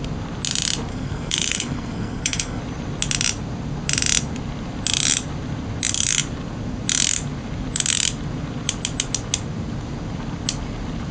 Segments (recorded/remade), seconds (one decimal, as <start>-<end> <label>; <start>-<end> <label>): 0.0-0.9 recorded; 0.9-2.6 remade; 2.6-11.1 recorded